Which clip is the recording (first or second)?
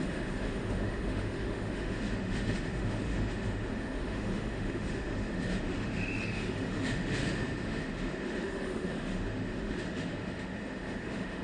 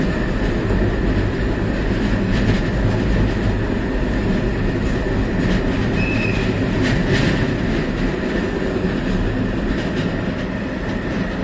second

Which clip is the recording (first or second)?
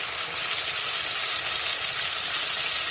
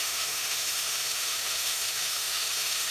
first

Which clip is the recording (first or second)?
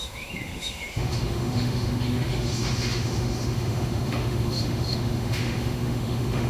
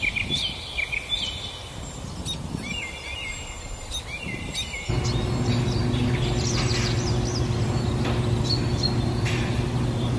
second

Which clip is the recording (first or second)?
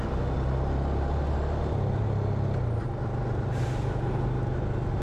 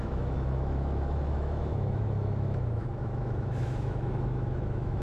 first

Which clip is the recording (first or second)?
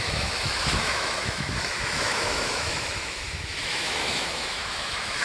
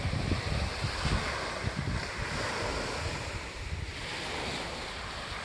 second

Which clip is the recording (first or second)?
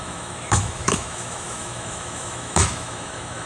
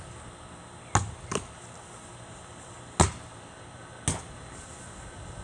second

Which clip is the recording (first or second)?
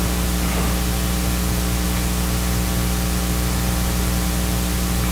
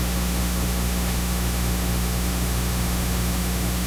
first